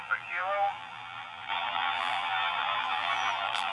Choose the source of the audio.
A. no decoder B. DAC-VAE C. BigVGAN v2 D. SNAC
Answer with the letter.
C